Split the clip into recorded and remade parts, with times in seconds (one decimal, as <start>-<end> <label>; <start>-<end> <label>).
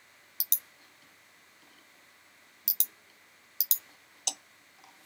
0.0-5.1 recorded